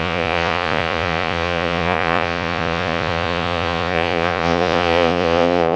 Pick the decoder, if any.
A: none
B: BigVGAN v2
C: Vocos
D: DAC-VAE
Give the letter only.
C